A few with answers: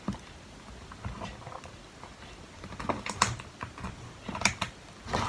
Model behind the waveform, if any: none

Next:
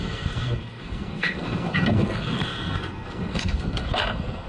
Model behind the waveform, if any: codec, SNAC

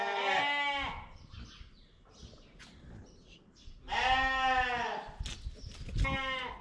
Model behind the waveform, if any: none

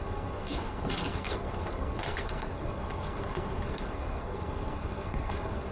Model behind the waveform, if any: codec, SNAC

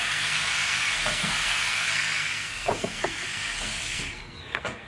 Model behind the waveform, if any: codec, SNAC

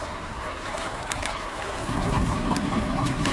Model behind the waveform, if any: codec, SNAC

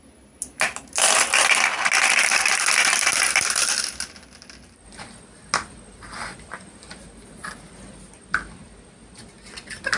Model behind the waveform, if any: none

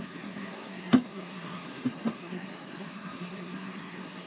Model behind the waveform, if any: codec, SNAC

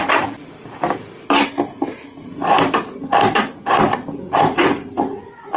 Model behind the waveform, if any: none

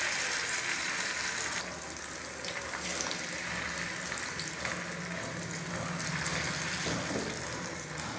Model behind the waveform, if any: none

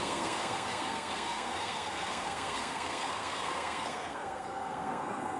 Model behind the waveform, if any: codec, SNAC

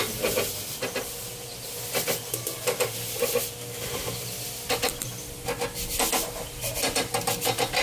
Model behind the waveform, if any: none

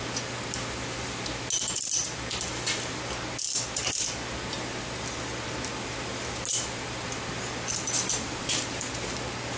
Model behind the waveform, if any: none